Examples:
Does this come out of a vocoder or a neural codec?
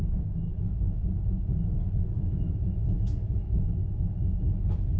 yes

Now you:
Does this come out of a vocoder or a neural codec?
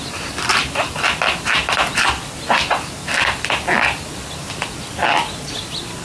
no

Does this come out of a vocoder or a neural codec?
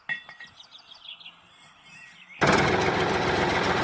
no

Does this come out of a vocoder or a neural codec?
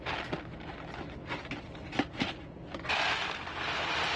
no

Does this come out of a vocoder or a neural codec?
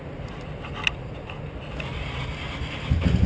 no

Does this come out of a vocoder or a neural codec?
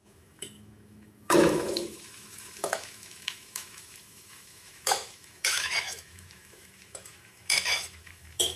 yes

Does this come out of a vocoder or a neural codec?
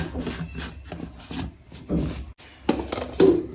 no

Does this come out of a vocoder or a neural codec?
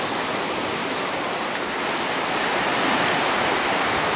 no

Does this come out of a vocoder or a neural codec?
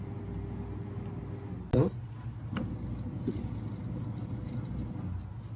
no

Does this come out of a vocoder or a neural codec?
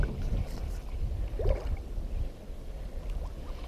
no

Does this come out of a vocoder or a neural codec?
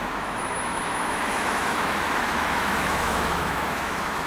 yes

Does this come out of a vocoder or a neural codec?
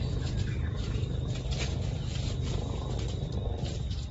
no